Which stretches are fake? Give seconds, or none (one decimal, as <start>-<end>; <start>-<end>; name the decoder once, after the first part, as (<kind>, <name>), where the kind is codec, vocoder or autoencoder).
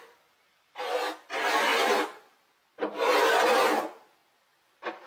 4.2-5.1 (vocoder, BigVGAN v2)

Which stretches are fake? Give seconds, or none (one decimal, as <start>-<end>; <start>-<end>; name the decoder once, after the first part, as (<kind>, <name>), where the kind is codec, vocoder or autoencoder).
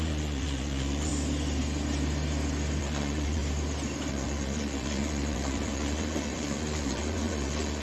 0.0-1.1 (vocoder, Vocos); 2.8-3.4; 4.1-7.8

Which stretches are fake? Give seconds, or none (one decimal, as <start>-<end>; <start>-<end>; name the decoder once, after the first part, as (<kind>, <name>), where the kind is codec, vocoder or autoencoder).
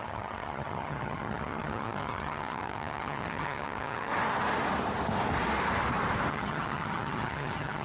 0.0-4.1 (vocoder, HiFi-GAN); 6.3-7.8